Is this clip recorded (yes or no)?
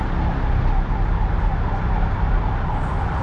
yes